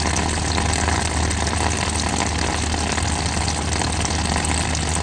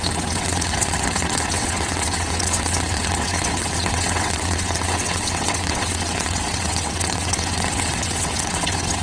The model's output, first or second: second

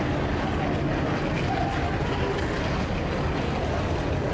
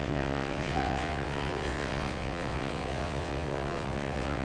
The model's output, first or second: second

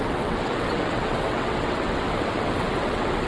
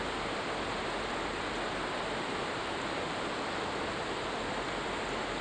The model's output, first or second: first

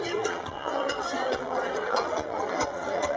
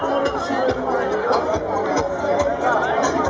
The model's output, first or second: first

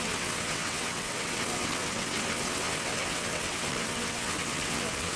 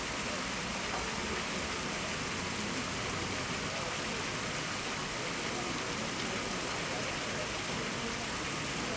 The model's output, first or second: first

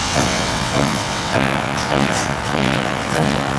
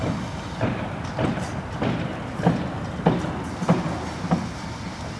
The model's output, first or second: first